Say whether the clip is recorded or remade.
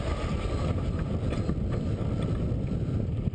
recorded